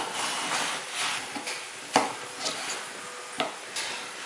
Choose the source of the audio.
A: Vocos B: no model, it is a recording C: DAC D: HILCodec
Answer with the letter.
B